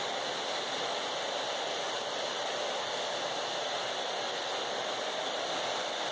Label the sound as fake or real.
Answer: fake